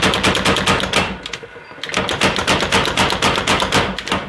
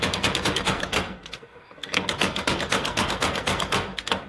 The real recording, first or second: first